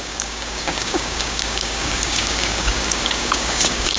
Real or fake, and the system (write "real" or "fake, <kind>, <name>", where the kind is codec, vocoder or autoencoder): fake, codec, DAC